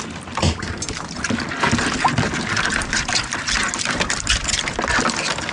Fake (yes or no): no